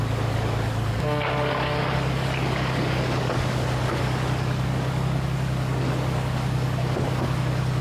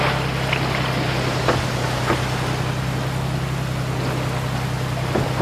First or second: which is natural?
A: second